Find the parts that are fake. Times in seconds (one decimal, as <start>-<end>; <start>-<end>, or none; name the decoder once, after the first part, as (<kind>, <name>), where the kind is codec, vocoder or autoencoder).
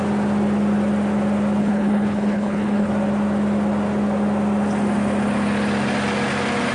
1.6-2.9 (codec, HILCodec)